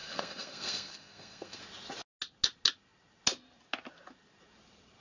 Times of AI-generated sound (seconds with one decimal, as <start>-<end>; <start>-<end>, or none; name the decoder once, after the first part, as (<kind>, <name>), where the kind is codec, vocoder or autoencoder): 0.0-1.6 (codec, SNAC)